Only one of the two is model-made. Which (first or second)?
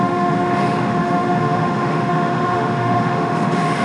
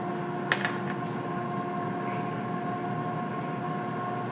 first